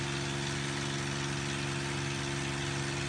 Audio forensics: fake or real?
real